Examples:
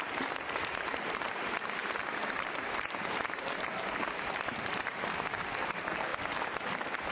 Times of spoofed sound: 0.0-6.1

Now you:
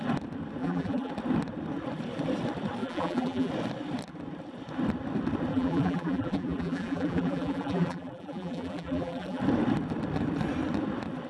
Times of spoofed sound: 0.6-1.1; 2.8-3.5; 5.5-9.4

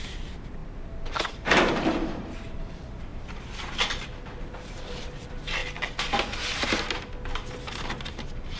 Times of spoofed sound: 0.0-0.6; 1.3-3.1; 4.4-5.6; 8.1-8.6